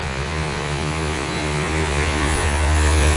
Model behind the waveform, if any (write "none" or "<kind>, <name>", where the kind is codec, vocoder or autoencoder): vocoder, Vocos